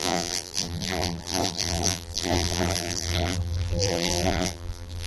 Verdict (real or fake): fake